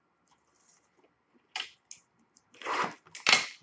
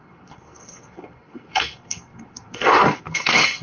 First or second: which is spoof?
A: second